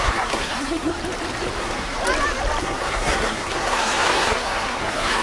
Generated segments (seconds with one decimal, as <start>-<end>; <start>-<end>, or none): 0.0-1.0; 1.6-2.0; 2.6-5.2